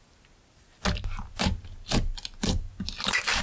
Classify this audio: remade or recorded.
recorded